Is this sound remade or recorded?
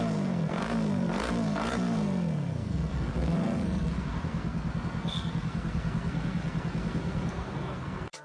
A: remade